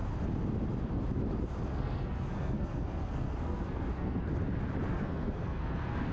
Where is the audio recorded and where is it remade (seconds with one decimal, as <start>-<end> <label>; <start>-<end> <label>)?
0.0-1.7 recorded; 1.7-4.3 remade; 4.3-4.9 recorded; 4.9-6.1 remade